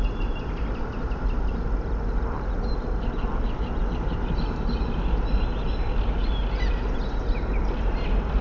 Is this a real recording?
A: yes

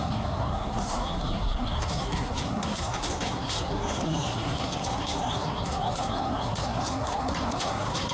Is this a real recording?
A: no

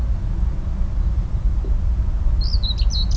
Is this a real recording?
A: yes